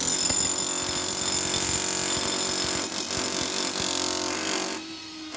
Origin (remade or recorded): recorded